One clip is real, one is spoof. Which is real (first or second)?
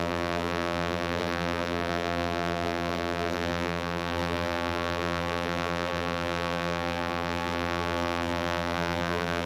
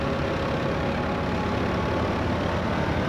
second